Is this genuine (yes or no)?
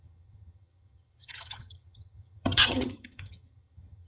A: no